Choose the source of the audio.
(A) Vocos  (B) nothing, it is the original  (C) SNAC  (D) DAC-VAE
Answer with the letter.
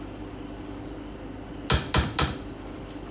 B